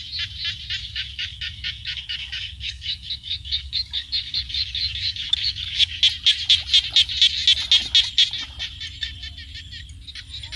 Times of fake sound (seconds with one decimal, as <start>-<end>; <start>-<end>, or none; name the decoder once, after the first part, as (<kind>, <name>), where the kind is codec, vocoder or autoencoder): 0.8-6.0 (codec, DAC)